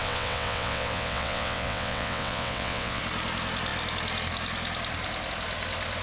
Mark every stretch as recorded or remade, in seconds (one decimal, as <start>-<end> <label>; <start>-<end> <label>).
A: 0.0-3.0 remade; 3.0-6.0 recorded